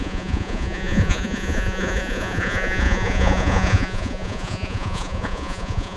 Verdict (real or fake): fake